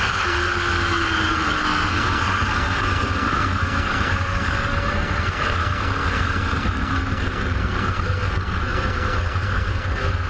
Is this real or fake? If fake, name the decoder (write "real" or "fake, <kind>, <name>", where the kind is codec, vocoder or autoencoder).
fake, codec, SNAC